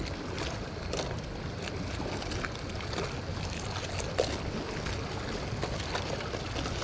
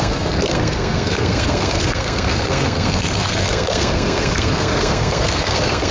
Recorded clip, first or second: first